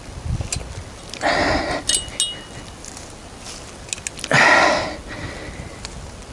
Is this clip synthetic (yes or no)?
no